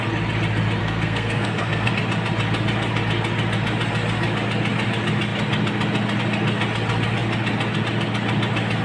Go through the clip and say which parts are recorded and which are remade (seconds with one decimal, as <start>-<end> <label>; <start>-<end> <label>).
0.0-0.8 recorded; 0.8-1.9 remade; 1.9-8.8 recorded